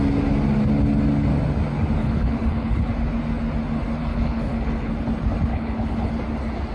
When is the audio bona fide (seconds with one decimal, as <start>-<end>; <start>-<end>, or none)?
0.0-2.0; 2.9-4.0; 4.9-5.5; 6.1-6.7